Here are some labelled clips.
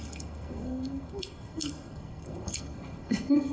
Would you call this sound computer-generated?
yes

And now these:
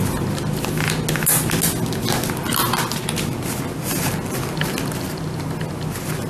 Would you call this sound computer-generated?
no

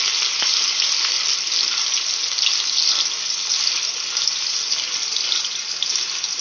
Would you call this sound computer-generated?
no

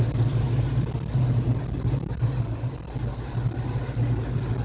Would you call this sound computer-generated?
no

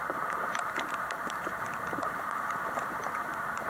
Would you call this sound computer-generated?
yes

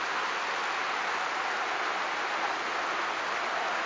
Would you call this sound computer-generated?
no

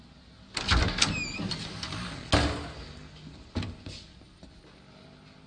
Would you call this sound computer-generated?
no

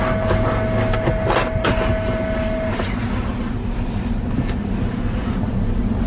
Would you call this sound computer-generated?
no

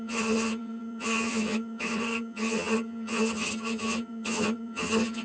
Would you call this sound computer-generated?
yes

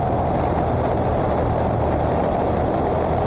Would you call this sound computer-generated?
no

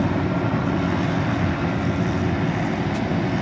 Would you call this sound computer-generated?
no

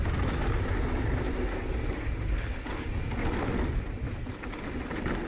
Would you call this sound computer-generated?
no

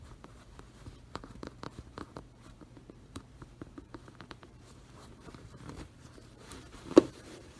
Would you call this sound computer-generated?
yes